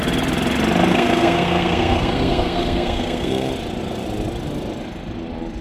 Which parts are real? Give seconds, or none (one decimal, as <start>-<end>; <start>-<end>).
0.0-0.9; 3.5-5.6